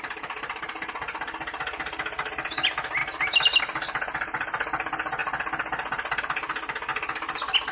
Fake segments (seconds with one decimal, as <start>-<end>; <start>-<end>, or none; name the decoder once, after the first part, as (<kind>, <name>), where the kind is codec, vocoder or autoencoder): none